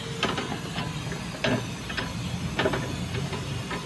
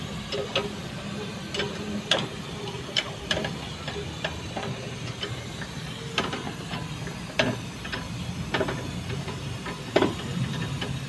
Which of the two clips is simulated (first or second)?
second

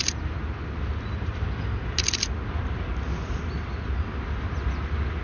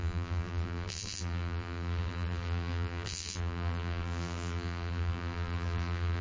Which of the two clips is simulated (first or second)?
second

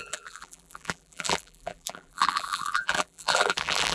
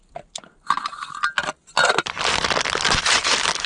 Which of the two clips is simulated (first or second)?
first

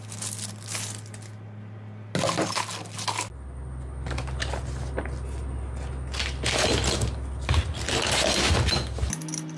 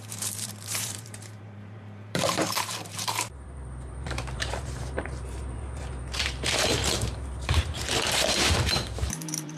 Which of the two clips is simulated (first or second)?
second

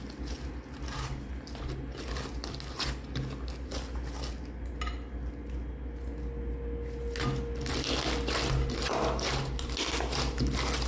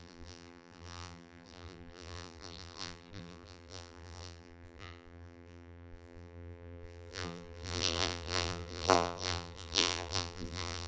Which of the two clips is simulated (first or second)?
second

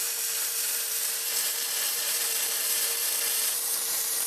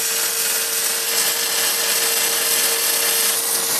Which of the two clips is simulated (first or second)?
first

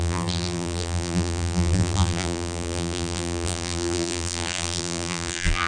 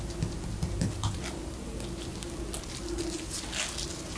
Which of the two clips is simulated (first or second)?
first